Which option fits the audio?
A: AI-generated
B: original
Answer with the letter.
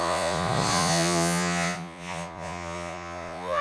A